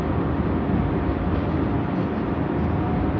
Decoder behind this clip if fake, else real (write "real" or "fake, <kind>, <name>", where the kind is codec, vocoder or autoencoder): real